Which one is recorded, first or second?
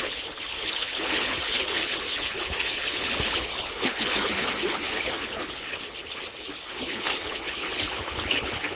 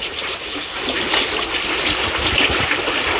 second